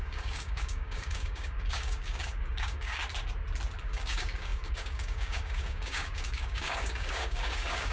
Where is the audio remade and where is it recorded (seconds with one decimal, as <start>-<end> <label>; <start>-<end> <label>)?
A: 0.0-3.0 remade; 3.0-3.8 recorded; 3.8-7.9 remade